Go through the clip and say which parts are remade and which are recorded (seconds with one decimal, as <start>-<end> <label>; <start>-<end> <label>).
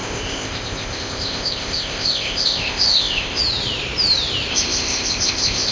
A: 0.0-3.4 remade; 3.4-4.5 recorded; 4.5-5.7 remade